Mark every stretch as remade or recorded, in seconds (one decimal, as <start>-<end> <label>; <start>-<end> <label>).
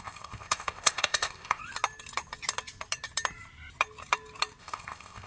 0.0-1.6 remade; 1.6-4.6 recorded; 4.6-5.3 remade